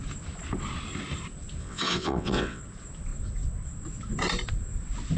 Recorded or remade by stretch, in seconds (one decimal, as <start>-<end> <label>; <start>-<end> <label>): 0.0-1.6 recorded; 1.6-2.6 remade; 2.6-5.2 recorded